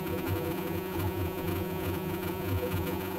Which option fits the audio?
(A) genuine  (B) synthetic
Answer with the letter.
B